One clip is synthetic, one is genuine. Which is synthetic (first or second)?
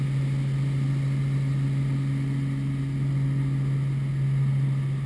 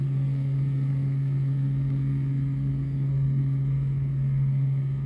second